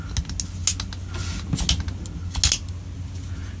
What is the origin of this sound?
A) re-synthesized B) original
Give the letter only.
B